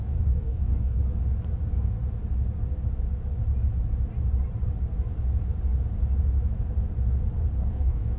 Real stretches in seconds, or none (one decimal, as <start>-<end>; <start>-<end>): 1.0-7.6